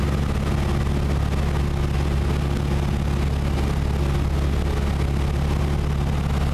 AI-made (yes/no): no